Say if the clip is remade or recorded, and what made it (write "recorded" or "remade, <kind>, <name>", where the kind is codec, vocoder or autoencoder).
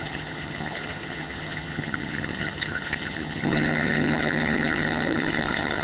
remade, vocoder, HiFi-GAN